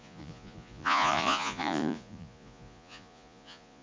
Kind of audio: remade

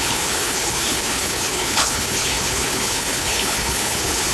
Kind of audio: remade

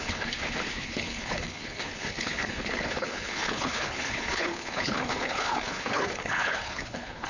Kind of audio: remade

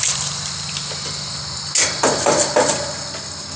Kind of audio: recorded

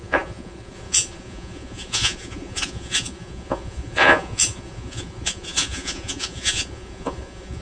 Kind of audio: remade